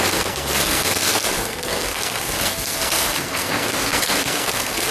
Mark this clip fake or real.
fake